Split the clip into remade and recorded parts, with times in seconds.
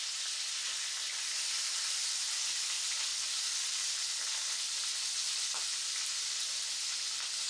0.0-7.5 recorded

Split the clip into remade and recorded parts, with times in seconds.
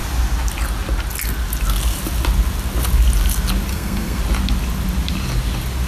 0.0-3.7 recorded; 3.7-4.2 remade; 4.2-5.9 recorded